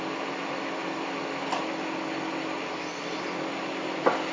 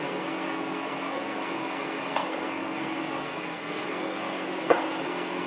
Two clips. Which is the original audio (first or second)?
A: first